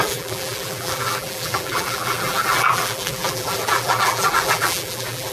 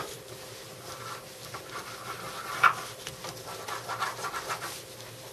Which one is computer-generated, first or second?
first